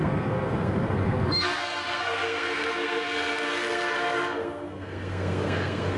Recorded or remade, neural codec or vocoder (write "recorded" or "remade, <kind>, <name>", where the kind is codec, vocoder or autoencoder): remade, codec, SNAC